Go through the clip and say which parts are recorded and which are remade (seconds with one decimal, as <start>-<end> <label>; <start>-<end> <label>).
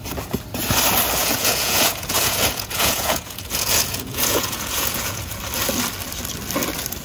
0.0-1.2 recorded; 1.2-5.4 remade; 5.4-7.0 recorded